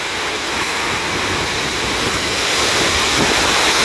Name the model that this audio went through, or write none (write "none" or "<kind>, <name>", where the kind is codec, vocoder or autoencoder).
none